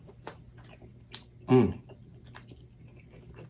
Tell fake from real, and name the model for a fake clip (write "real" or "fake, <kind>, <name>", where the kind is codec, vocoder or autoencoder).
real